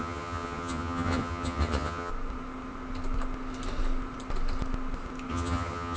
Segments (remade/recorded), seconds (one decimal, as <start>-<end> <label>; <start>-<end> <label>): 0.0-2.1 remade; 2.1-5.3 recorded; 5.3-6.0 remade